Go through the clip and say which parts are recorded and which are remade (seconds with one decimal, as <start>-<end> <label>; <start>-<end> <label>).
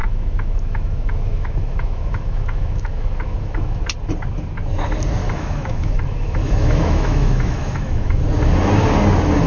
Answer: 0.0-3.8 remade; 3.8-5.2 recorded; 5.2-8.2 remade; 8.2-9.5 recorded